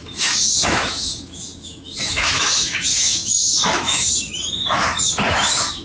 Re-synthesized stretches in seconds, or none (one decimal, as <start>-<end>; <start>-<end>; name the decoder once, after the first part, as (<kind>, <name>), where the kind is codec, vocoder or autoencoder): 0.0-5.8 (autoencoder, DAC-VAE)